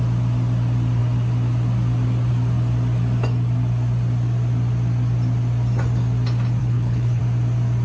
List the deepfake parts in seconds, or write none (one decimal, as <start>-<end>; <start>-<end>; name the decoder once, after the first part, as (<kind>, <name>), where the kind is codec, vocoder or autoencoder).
6.6-7.2 (codec, HILCodec)